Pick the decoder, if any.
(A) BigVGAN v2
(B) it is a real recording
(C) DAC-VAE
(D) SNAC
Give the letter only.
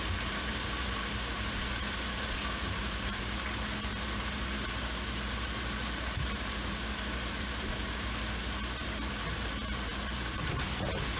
A